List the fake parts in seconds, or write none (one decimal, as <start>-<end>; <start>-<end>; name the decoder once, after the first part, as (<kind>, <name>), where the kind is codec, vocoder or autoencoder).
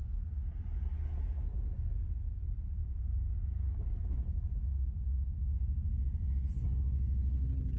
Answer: none